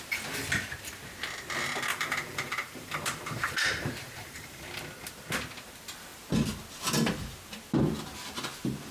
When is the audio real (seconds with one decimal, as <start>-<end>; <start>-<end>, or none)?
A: 0.0-1.9; 4.6-8.9